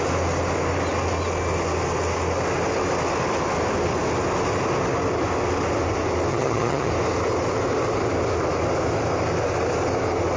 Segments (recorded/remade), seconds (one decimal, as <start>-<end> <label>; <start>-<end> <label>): 0.0-6.3 recorded; 6.3-6.9 remade; 6.9-10.4 recorded